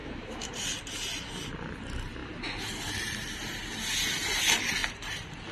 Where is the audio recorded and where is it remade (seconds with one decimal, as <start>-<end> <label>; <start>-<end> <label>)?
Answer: 0.0-0.5 remade; 0.5-5.5 recorded